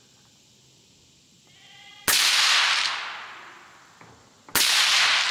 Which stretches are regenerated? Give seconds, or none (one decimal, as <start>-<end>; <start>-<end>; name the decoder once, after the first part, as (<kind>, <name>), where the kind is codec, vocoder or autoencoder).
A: none